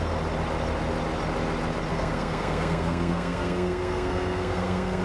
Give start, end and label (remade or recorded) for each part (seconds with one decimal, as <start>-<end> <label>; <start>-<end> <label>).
0.0-1.9 recorded; 1.9-5.0 remade